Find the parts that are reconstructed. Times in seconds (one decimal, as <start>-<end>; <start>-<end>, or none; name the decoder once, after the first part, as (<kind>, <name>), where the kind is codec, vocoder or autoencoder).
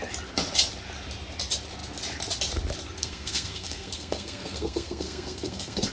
3.0-5.9 (codec, SNAC)